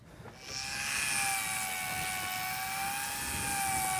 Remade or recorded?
recorded